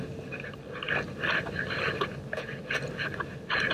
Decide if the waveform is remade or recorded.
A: recorded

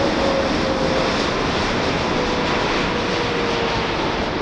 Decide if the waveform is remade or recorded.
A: recorded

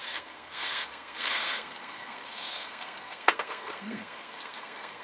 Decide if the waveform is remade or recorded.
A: remade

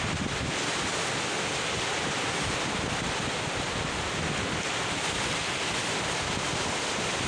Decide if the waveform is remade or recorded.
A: recorded